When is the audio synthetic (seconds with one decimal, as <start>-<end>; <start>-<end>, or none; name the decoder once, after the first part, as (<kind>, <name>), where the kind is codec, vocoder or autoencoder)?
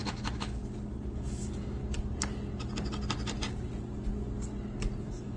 0.0-0.6 (autoencoder, DAC-VAE); 1.1-1.8; 5.0-5.4